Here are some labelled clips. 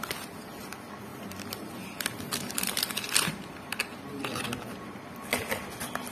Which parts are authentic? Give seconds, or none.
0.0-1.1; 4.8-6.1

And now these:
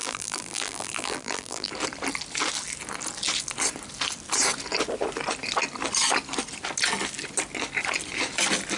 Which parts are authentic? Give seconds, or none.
1.7-8.8

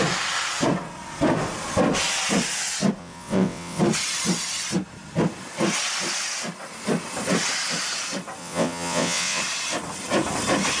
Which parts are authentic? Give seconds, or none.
0.0-3.0; 3.8-8.4; 9.4-10.8